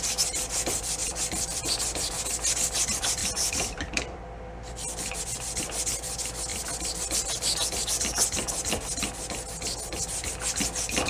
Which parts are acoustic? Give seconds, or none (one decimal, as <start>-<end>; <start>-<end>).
0.0-1.0; 2.2-3.2; 5.2-11.1